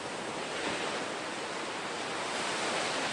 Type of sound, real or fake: real